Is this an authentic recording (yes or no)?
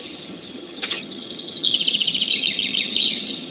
no